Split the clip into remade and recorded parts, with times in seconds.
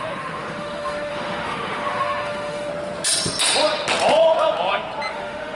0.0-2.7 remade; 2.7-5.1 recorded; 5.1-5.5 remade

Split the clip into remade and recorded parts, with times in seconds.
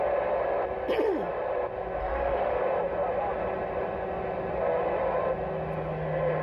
0.0-2.0 recorded; 2.0-2.6 remade; 2.6-6.4 recorded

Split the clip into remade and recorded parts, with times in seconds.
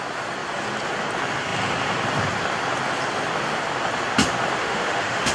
0.0-4.6 recorded; 4.6-5.3 remade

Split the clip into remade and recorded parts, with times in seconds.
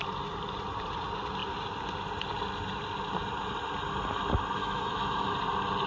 0.0-4.6 recorded; 4.6-5.3 remade; 5.3-5.9 recorded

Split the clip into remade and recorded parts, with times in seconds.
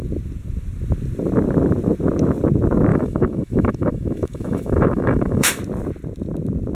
0.0-2.9 recorded; 2.9-5.6 remade; 5.6-6.7 recorded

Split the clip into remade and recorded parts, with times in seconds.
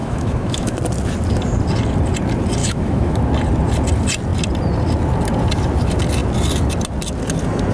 0.0-0.8 remade; 0.8-2.6 recorded; 2.6-3.2 remade; 3.2-7.7 recorded